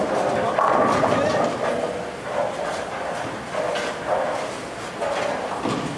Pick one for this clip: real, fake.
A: real